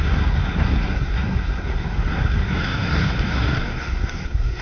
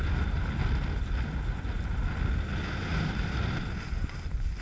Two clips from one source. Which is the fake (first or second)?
first